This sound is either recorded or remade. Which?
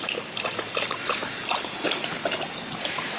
recorded